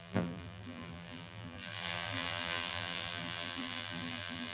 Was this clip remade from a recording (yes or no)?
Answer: yes